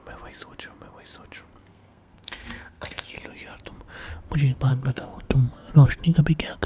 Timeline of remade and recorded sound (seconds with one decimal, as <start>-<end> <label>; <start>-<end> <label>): 0.0-1.7 recorded; 1.7-3.2 remade; 3.2-4.7 recorded; 4.7-6.2 remade; 6.2-6.7 recorded